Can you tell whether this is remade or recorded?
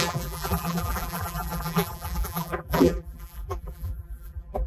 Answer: remade